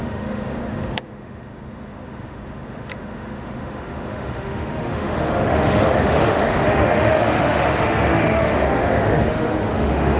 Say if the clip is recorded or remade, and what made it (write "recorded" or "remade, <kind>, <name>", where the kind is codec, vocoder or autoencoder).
remade, autoencoder, DAC-VAE